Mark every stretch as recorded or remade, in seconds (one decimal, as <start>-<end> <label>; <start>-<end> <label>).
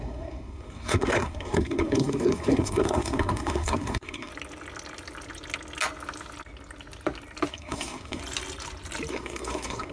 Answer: 0.0-4.3 remade; 4.3-7.5 recorded; 7.5-8.2 remade; 8.2-9.1 recorded; 9.1-9.9 remade